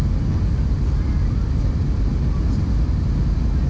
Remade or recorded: recorded